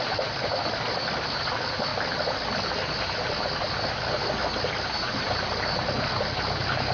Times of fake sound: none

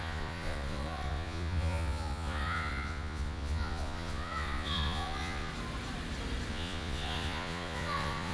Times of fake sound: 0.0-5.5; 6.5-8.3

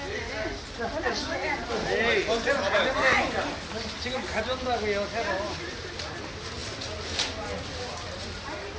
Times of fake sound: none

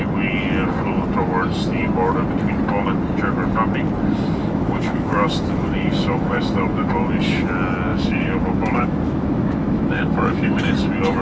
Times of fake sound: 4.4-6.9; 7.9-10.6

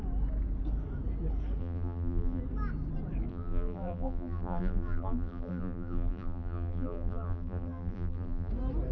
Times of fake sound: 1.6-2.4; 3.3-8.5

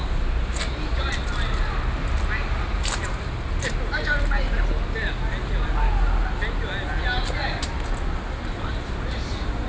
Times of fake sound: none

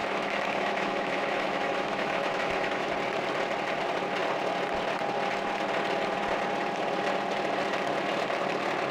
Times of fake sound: 0.0-2.9

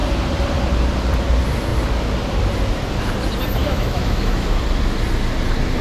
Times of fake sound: 3.6-4.6